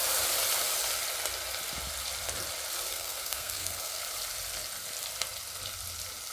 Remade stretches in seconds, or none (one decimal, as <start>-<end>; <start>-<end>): 2.9-4.0